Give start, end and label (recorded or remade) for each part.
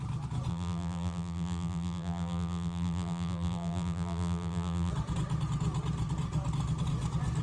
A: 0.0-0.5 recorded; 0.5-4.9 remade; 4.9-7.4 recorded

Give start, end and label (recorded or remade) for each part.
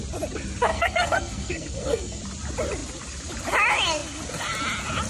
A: 0.0-0.7 recorded; 0.7-2.2 remade; 2.2-5.1 recorded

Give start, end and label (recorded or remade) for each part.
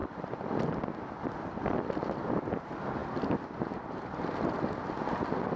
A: 0.0-5.6 recorded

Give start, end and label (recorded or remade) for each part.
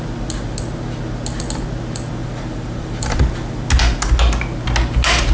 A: 0.0-2.2 recorded; 2.2-3.3 remade; 3.3-5.3 recorded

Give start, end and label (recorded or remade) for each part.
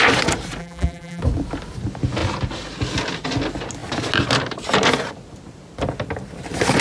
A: 0.0-0.6 recorded; 0.6-1.2 remade; 1.2-6.8 recorded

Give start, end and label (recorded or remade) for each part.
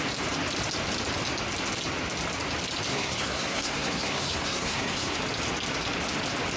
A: 0.0-2.9 recorded; 2.9-5.2 remade; 5.2-6.6 recorded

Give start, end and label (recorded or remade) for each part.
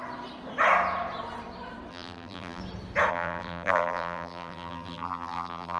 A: 0.0-1.9 recorded; 1.9-2.6 remade; 2.6-3.1 recorded; 3.1-5.8 remade